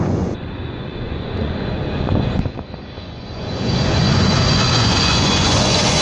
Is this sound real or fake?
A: fake